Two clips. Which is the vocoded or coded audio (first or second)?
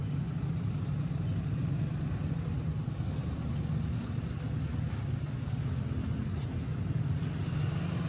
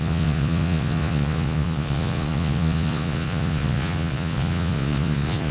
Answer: second